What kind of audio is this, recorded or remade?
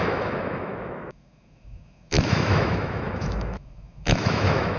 remade